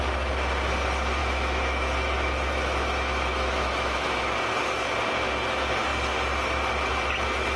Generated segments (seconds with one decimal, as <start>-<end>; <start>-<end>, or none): 1.2-4.4